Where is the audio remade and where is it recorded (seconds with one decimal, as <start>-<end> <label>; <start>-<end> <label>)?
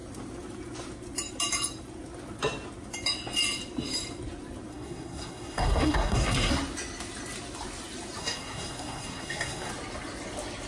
0.0-4.7 recorded; 4.7-6.5 remade; 6.5-8.2 recorded; 8.2-9.7 remade; 9.7-10.7 recorded